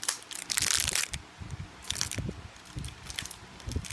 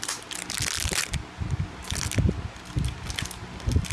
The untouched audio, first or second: second